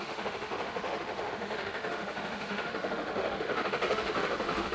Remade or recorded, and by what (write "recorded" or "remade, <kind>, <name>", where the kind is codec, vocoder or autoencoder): remade, autoencoder, DAC-VAE